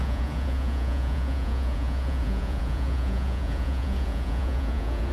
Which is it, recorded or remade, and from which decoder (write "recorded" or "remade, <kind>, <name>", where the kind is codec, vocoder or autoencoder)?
remade, vocoder, Vocos